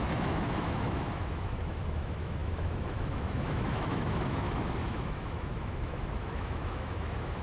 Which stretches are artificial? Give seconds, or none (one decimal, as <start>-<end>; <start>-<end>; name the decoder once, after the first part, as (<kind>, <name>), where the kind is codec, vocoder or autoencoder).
0.0-7.4 (autoencoder, DAC-VAE)